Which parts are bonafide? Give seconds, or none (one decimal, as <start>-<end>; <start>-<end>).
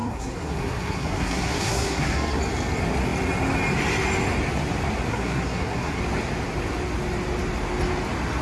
2.4-5.1; 6.0-8.4